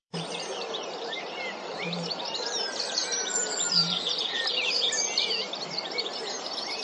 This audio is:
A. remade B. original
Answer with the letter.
A